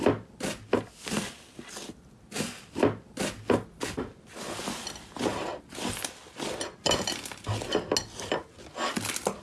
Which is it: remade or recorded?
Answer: recorded